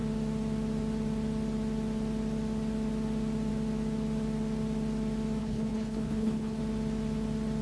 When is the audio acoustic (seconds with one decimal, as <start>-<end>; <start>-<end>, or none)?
0.0-5.4; 6.6-7.6